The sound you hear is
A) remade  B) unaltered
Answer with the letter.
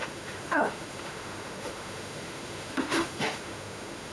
A